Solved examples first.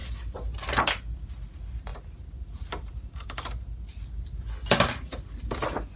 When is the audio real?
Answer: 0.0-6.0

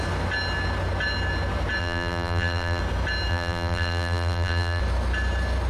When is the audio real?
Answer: 0.0-1.8; 2.8-3.3; 4.8-5.7

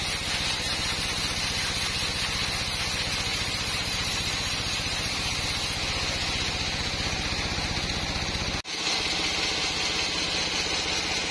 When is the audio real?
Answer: 0.0-3.3; 5.4-11.3

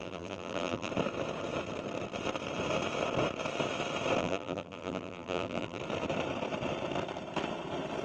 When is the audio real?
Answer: 0.9-4.2; 5.8-8.0

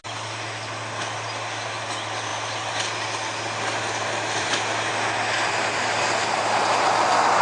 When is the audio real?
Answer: 0.0-2.3; 4.9-7.4

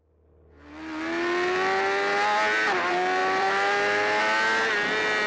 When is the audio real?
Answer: 0.0-3.2; 4.2-5.3

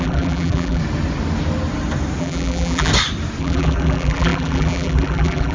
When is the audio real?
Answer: 0.8-2.2; 2.9-3.4

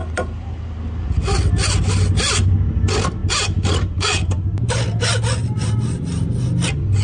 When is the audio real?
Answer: 0.0-7.0